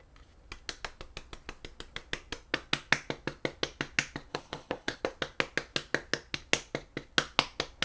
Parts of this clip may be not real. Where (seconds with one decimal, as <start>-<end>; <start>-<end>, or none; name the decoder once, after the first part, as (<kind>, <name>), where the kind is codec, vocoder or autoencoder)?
4.3-5.0 (codec, HILCodec)